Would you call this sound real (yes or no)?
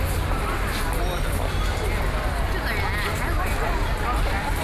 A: yes